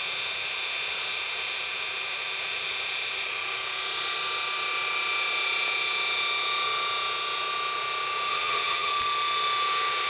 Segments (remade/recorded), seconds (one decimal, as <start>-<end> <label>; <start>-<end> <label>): 0.0-8.3 recorded; 8.3-8.9 remade; 8.9-10.1 recorded